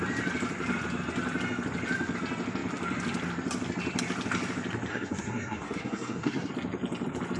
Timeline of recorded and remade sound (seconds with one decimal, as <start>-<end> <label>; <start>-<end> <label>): 0.0-4.9 recorded; 4.9-6.5 remade; 6.5-7.4 recorded